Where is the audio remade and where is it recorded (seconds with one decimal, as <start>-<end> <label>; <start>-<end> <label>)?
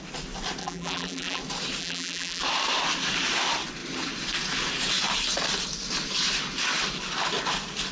0.0-0.6 recorded; 0.6-1.4 remade; 1.4-1.8 recorded; 1.8-2.4 remade; 2.4-7.9 recorded